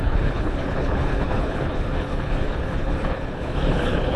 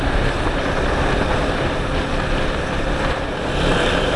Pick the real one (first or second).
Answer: second